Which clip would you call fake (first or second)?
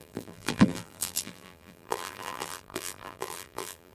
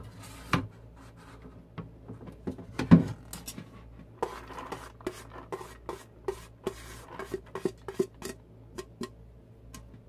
first